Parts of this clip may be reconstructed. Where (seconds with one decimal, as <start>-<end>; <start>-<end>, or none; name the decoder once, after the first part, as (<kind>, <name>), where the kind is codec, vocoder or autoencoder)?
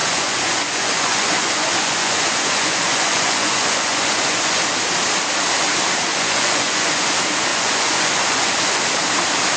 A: 0.0-4.6 (vocoder, Vocos); 6.1-7.1; 7.5-8.8